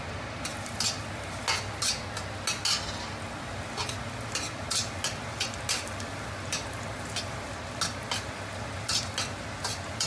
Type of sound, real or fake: real